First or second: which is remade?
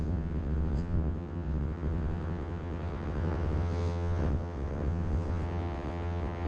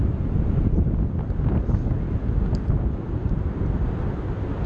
first